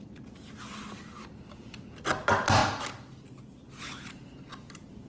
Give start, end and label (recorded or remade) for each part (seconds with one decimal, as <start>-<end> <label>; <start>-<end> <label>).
0.0-5.1 recorded